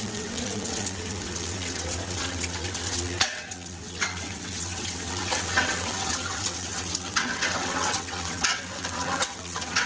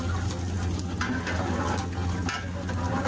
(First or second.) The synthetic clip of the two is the first